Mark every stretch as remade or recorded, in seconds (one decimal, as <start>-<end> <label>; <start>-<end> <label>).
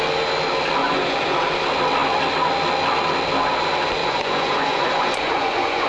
0.0-0.8 recorded; 0.8-1.4 remade; 1.4-4.0 recorded; 4.0-5.9 remade